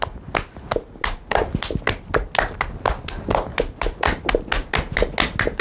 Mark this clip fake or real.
real